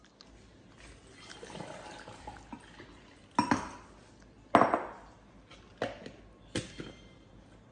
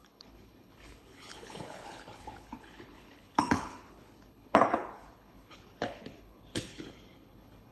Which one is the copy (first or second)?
second